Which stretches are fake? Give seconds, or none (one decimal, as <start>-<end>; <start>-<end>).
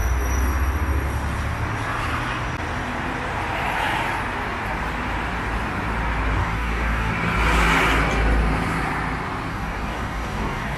6.4-7.1; 9.5-10.8